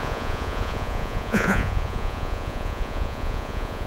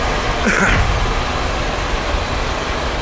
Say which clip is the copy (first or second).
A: first